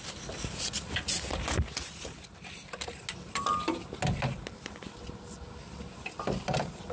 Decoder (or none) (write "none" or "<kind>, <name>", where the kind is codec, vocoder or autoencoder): none